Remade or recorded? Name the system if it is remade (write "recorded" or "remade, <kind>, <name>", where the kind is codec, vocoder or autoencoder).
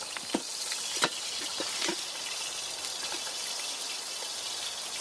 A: recorded